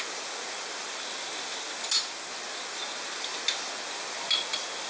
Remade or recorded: recorded